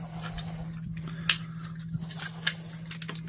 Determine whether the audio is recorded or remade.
recorded